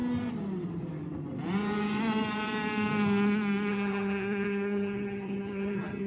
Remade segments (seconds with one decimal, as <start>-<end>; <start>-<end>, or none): 3.7-6.1